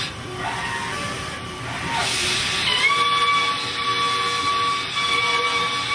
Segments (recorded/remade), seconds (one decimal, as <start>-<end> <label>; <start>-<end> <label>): 0.0-5.9 recorded